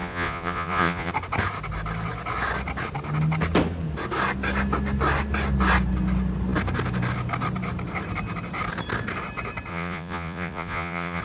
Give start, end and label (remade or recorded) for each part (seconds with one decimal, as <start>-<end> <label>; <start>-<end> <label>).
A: 0.0-1.1 remade; 1.1-9.7 recorded; 9.7-11.2 remade